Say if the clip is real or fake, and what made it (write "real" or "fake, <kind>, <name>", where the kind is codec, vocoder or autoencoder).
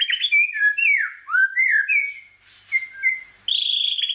real